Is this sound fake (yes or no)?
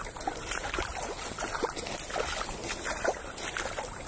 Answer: no